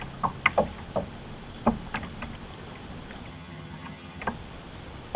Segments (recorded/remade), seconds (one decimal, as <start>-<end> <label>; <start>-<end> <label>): 0.0-3.3 recorded; 3.3-4.2 remade; 4.2-5.2 recorded

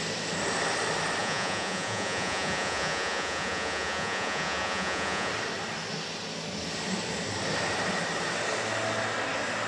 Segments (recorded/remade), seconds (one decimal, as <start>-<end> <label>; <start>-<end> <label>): 0.0-1.2 recorded; 1.2-5.3 remade; 5.3-9.7 recorded

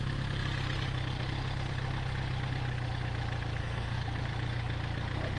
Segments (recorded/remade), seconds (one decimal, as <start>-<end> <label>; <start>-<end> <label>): 0.0-3.6 recorded; 3.6-4.2 remade; 4.2-5.4 recorded

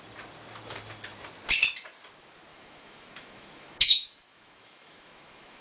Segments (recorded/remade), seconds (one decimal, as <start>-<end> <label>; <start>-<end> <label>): 0.0-2.5 recorded; 2.5-5.6 remade

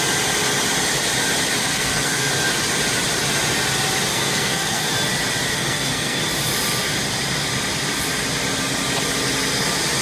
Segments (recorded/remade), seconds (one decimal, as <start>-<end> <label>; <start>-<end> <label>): 0.0-1.6 recorded; 1.6-2.3 remade; 2.3-4.1 recorded; 4.1-4.9 remade; 4.9-5.5 recorded; 5.5-6.2 remade; 6.2-10.0 recorded

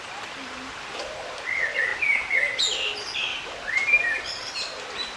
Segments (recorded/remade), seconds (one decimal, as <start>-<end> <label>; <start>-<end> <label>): 0.0-3.3 recorded; 3.3-4.8 remade; 4.8-5.2 recorded